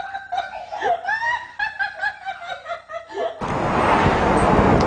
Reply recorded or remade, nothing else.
recorded